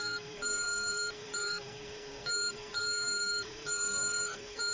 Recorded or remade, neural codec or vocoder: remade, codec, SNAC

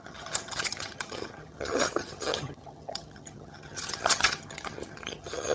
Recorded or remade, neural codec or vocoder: remade, vocoder, HiFi-GAN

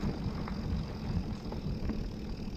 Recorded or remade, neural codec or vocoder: recorded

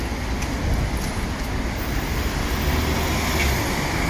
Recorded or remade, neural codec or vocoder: recorded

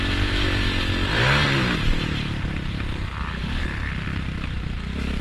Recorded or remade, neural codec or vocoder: recorded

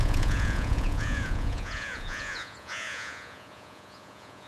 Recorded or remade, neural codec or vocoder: remade, vocoder, Vocos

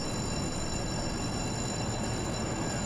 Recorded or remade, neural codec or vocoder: recorded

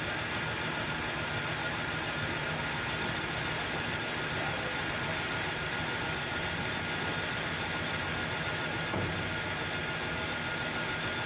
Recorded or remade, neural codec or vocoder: recorded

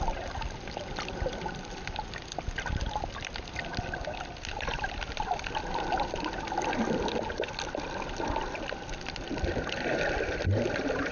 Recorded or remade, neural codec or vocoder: recorded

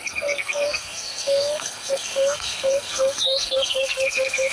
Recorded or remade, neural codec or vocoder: remade, codec, SNAC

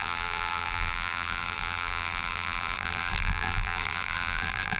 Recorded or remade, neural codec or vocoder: remade, vocoder, BigVGAN v2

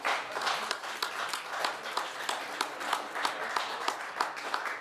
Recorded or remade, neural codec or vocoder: recorded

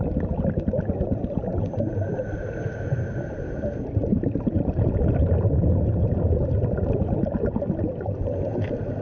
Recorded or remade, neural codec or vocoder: recorded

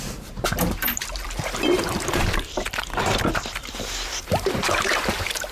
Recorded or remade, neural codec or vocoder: remade, vocoder, BigVGAN v2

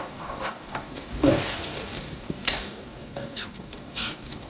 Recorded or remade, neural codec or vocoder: remade, codec, DAC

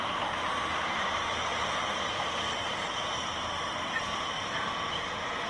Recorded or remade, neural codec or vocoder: remade, vocoder, BigVGAN v2